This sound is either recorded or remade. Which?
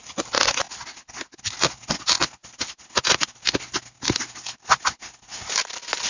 recorded